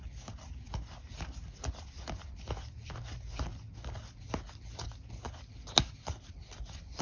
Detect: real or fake real